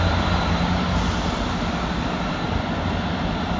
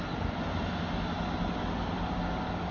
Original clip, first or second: second